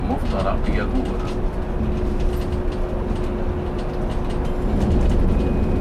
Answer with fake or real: real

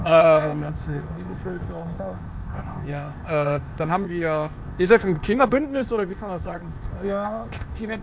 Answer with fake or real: fake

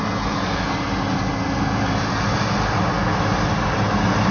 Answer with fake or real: real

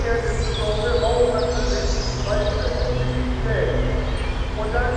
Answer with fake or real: real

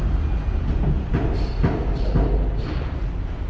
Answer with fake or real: real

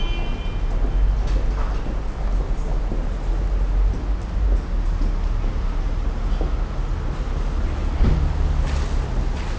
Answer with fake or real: real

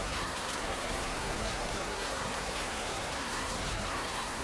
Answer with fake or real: fake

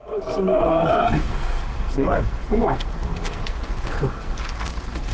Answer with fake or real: fake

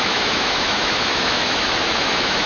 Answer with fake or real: fake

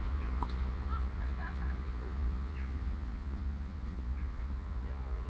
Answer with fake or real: fake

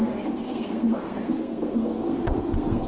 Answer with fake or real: fake